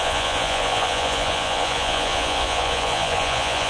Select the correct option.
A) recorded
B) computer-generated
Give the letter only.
B